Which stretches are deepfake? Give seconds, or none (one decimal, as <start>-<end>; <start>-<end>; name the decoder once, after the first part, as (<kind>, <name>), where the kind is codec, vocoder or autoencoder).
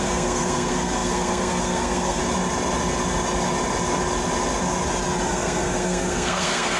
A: 0.0-2.2 (codec, SNAC); 5.3-6.8